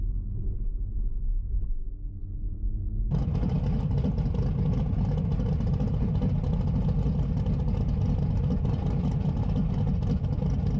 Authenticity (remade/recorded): recorded